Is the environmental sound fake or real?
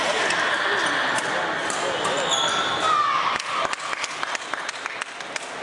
real